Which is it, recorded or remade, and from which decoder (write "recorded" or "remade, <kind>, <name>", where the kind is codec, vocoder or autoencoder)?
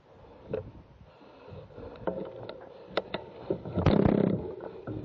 recorded